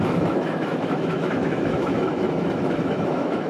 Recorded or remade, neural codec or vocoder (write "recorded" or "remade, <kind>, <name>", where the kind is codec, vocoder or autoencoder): remade, autoencoder, DAC-VAE